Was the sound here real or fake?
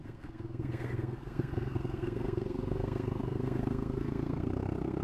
fake